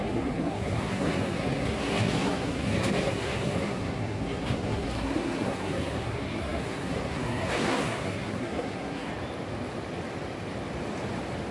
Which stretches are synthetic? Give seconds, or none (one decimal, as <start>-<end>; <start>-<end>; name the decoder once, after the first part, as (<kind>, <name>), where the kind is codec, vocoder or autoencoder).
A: 0.0-9.1 (codec, SNAC)